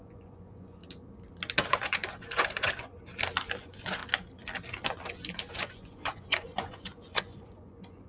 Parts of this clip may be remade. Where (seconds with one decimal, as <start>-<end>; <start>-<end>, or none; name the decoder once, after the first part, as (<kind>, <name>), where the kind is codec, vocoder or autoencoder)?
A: 0.0-0.8 (vocoder, Vocos); 1.7-2.9; 3.6-4.0; 5.5-8.1